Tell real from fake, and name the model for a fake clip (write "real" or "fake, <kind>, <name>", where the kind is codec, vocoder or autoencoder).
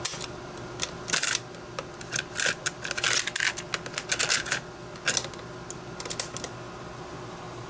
real